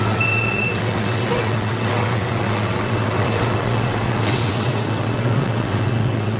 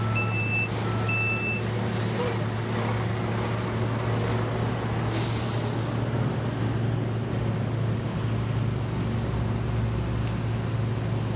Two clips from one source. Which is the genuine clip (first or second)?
second